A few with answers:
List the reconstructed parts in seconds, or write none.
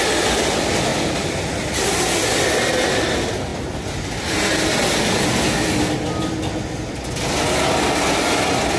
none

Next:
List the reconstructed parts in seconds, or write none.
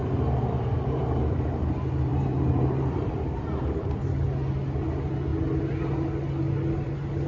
0.0-1.7; 2.1-4.0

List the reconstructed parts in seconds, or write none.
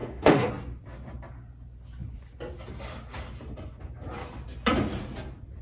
0.0-0.5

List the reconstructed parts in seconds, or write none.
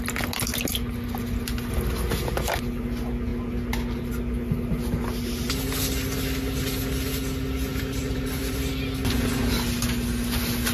7.6-8.7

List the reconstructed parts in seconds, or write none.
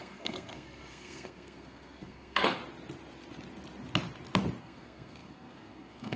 0.0-2.6; 4.6-6.2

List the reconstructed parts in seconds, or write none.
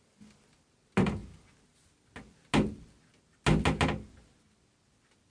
none